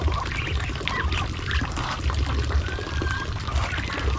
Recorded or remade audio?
recorded